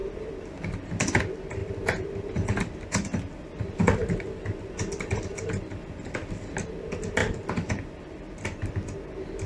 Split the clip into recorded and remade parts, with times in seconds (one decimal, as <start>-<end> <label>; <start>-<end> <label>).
0.0-1.2 remade; 1.2-1.6 recorded; 1.6-5.9 remade; 5.9-7.2 recorded; 7.2-8.7 remade; 8.7-9.5 recorded